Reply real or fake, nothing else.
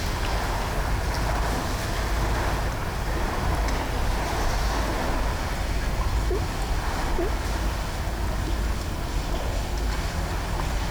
real